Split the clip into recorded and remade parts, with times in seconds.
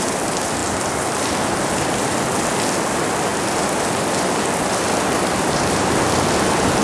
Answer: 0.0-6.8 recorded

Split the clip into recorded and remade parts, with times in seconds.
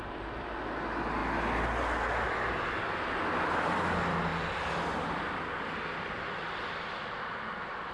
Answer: 0.0-7.9 recorded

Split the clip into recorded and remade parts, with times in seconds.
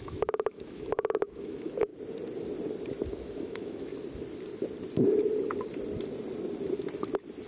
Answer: 0.0-1.9 remade; 1.9-3.1 recorded; 3.1-3.9 remade; 3.9-7.5 recorded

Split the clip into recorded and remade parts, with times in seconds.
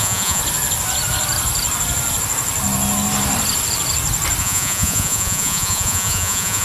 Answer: 0.0-0.4 remade; 0.4-4.4 recorded; 4.4-6.6 remade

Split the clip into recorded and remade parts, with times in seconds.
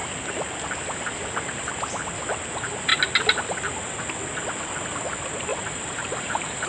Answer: 0.0-5.5 recorded; 5.5-6.7 remade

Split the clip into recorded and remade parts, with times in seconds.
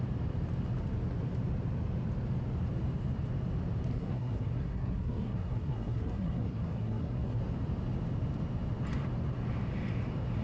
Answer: 0.0-3.9 recorded; 3.9-7.4 remade; 7.4-10.4 recorded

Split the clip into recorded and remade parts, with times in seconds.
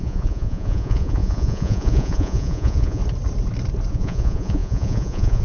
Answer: 0.0-3.0 remade; 3.0-3.9 recorded; 3.9-5.4 remade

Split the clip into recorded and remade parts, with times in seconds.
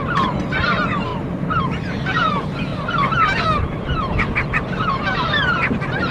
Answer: 0.0-6.1 recorded